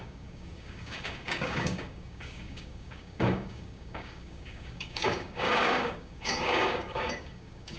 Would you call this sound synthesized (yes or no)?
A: yes